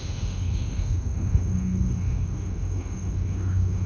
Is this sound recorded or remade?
remade